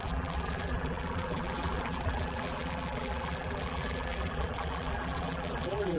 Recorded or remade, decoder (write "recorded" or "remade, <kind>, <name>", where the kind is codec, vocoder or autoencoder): remade, vocoder, BigVGAN v2